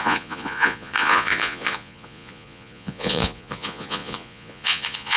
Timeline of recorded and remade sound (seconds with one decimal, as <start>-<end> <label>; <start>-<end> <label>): 0.0-5.2 remade